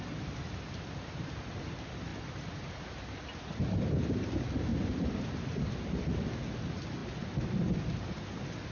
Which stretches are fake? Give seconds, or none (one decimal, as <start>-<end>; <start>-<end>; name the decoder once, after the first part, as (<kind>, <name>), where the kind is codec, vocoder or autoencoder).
4.7-6.4 (vocoder, BigVGAN v2)